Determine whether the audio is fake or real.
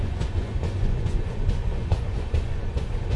fake